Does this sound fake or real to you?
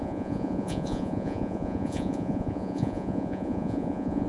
fake